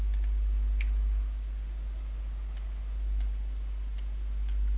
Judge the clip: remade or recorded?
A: recorded